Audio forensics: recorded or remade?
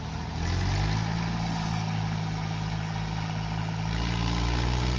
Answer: recorded